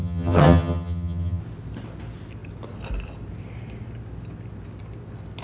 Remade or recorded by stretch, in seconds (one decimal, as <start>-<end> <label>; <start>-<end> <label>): 0.0-1.4 remade; 1.4-5.4 recorded